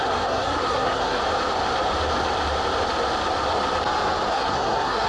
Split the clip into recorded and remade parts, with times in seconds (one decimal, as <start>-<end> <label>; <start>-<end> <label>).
0.0-1.2 remade; 1.2-4.3 recorded; 4.3-5.1 remade

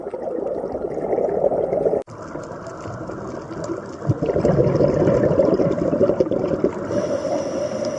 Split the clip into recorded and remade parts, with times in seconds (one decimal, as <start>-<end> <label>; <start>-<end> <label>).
0.0-8.0 recorded

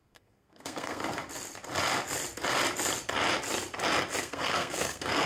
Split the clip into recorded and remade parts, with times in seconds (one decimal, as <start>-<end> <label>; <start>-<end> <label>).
0.0-1.0 remade; 1.0-4.2 recorded; 4.2-5.3 remade

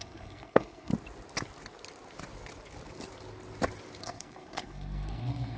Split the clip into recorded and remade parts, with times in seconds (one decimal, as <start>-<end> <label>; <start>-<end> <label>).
0.0-0.9 remade; 0.9-4.0 recorded; 4.0-5.6 remade

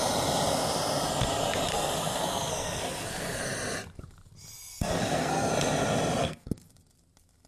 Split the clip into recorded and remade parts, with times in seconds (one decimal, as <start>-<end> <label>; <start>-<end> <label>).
0.0-1.7 recorded; 1.7-3.4 remade; 3.4-4.7 recorded; 4.7-5.5 remade; 5.5-6.2 recorded; 6.2-6.7 remade; 6.7-7.5 recorded

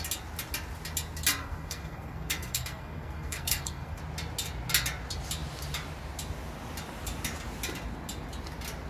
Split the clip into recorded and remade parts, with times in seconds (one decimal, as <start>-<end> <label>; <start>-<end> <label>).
0.0-1.4 recorded; 1.4-4.0 remade; 4.0-8.9 recorded

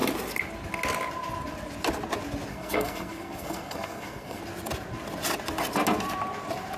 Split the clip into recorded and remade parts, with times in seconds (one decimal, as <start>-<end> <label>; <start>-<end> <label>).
0.0-2.5 recorded; 2.5-4.4 remade; 4.4-6.8 recorded